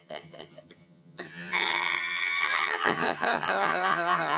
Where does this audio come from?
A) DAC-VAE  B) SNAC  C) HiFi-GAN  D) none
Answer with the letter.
C